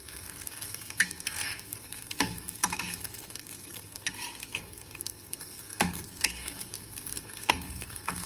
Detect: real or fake fake